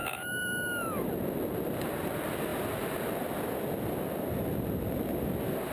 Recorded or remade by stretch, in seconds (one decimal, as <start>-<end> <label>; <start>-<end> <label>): 0.0-1.1 remade; 1.1-5.7 recorded